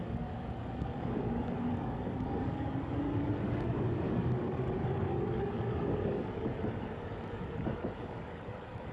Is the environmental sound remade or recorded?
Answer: remade